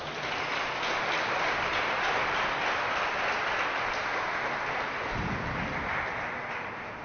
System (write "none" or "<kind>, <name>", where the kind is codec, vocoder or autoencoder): none